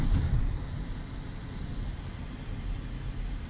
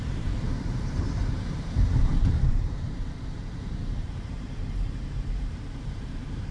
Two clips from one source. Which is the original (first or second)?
first